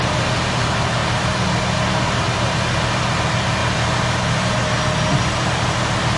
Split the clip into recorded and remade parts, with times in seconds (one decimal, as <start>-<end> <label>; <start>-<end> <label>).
0.0-6.2 recorded